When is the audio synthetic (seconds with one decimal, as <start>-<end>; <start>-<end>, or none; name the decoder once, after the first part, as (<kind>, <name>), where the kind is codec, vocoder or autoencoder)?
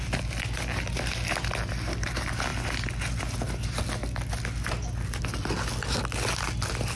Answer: none